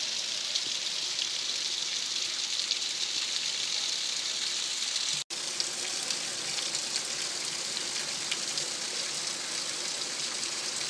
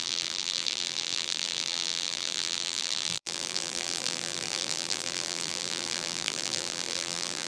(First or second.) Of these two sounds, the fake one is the second